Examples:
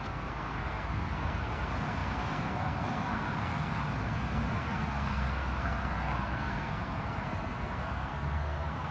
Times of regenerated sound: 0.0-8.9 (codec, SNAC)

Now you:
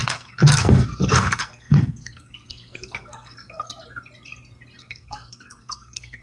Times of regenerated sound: 0.0-3.7 (codec, SNAC); 4.8-6.2

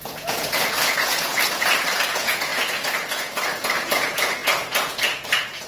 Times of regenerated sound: 0.0-1.3 (vocoder, Vocos); 2.1-5.7

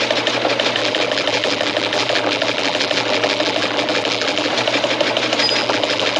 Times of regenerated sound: 0.8-4.5 (vocoder, BigVGAN v2); 5.6-6.2